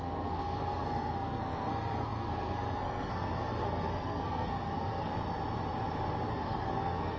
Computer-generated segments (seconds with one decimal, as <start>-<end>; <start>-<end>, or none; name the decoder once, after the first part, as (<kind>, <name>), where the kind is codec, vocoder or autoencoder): 0.0-5.1 (codec, SNAC); 6.3-7.2